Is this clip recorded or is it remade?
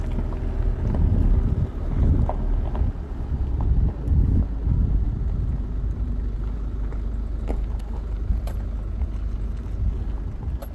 recorded